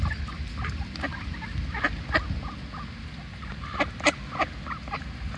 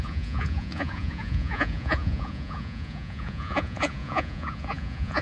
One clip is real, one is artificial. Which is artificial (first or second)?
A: second